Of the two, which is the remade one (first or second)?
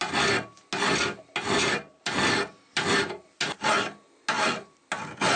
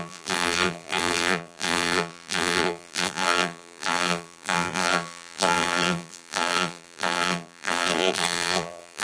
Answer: second